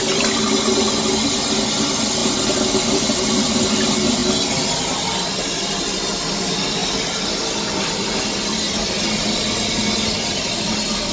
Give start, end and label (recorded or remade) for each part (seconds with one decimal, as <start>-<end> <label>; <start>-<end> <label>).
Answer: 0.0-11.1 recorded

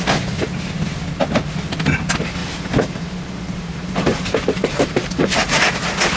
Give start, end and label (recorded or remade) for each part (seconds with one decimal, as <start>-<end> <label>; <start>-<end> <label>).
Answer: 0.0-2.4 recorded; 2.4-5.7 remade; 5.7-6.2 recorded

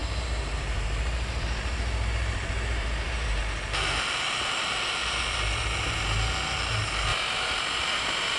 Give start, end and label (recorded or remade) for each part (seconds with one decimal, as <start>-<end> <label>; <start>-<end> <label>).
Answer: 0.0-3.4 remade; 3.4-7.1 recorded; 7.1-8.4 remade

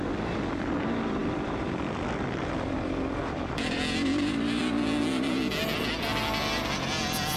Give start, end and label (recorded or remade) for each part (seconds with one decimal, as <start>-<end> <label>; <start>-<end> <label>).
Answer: 0.0-1.2 recorded; 1.2-4.6 remade; 4.6-7.4 recorded

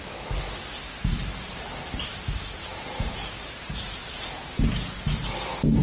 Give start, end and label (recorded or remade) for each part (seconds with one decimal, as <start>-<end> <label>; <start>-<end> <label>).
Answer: 0.0-1.1 recorded; 1.1-4.2 remade; 4.2-5.8 recorded

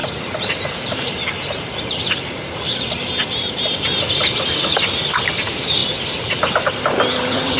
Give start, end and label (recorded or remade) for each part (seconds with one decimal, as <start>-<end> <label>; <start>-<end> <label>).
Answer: 0.0-4.3 remade; 4.3-7.6 recorded